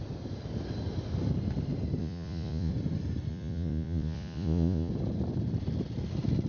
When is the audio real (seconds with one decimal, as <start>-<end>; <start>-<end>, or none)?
0.0-2.0; 2.7-3.3; 4.9-6.5